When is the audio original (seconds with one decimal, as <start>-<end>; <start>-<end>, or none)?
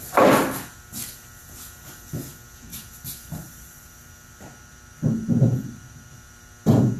0.0-2.7; 6.5-7.0